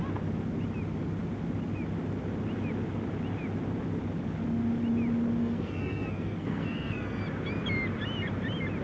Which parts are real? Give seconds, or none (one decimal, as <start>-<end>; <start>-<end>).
0.0-5.4; 7.2-8.8